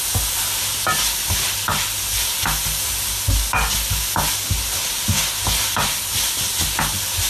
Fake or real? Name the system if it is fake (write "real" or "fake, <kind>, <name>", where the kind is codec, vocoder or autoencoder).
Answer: real